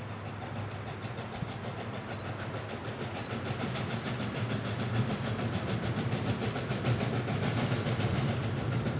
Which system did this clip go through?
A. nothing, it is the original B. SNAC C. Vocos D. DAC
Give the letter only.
A